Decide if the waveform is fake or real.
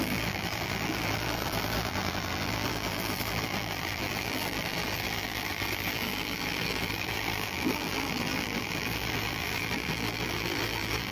fake